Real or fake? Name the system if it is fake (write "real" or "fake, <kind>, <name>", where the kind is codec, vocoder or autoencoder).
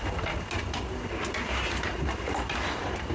real